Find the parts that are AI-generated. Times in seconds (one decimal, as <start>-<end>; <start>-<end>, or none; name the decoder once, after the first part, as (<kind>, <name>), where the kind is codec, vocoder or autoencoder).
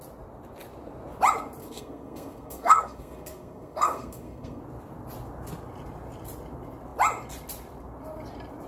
1.6-4.6 (codec, SNAC)